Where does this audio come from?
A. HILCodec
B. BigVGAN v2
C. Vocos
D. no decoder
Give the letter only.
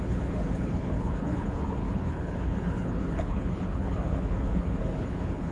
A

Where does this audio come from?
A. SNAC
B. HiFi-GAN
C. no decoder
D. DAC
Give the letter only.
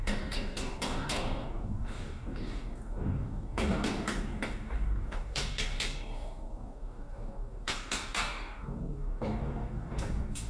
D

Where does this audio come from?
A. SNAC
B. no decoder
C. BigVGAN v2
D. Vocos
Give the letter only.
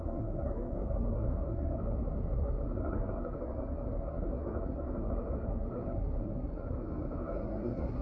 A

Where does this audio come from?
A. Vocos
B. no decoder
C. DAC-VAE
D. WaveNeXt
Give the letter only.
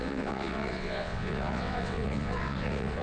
D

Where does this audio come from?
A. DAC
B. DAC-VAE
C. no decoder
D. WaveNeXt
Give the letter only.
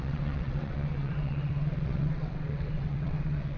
D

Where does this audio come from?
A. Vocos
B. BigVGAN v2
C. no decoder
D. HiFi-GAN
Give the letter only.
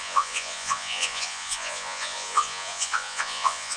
A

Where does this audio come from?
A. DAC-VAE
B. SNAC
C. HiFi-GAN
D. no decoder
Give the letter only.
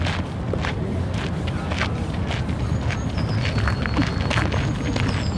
D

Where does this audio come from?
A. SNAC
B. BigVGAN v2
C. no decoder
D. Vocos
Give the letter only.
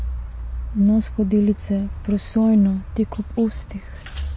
B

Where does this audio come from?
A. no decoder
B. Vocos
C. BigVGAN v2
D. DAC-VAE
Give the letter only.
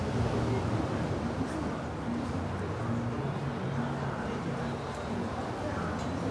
A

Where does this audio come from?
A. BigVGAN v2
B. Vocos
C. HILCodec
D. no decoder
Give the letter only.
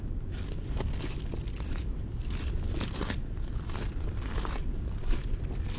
A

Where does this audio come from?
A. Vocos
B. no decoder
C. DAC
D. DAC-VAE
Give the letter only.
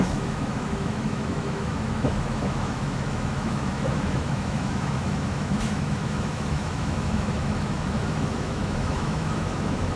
D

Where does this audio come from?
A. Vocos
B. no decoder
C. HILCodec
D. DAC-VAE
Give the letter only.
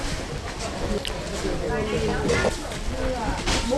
B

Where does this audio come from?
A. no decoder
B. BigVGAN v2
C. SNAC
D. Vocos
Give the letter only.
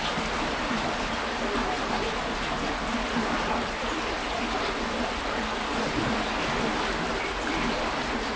A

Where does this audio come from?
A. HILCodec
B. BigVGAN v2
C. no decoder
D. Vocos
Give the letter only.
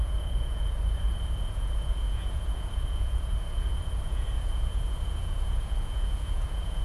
D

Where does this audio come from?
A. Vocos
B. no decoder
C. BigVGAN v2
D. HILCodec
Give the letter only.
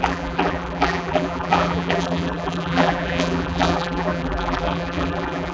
C